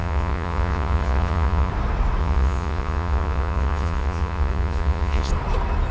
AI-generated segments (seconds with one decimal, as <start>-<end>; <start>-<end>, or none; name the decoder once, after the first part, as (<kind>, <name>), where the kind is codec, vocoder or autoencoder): 0.0-1.7 (vocoder, Vocos); 2.2-5.3